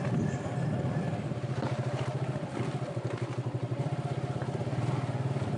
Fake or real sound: real